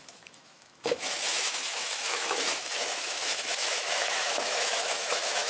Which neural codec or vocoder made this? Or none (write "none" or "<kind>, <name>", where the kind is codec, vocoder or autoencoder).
autoencoder, DAC-VAE